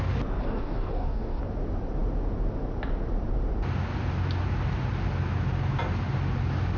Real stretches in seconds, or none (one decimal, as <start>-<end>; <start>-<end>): 0.0-0.4; 1.4-6.8